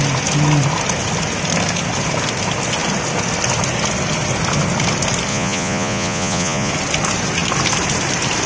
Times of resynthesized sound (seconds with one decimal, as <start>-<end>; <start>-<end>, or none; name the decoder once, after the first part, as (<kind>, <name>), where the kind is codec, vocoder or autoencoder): 5.3-6.7 (vocoder, Vocos)